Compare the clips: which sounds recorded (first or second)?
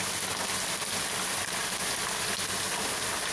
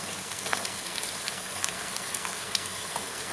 first